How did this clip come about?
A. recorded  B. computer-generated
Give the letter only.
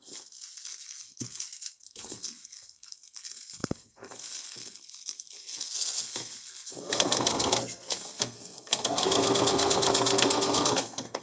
B